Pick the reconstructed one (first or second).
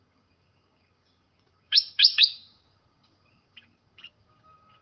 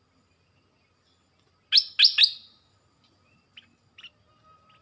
first